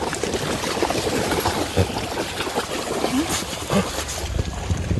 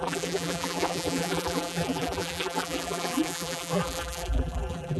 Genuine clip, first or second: first